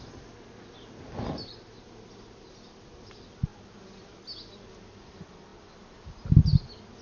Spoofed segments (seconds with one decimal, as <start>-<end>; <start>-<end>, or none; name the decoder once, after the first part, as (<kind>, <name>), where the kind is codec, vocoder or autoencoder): none